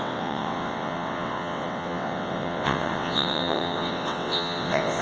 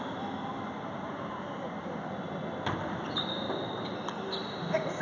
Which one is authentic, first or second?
second